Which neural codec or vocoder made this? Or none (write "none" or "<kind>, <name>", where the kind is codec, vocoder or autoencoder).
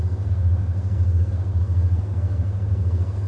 codec, SNAC